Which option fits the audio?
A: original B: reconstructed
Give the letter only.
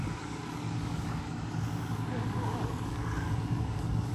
B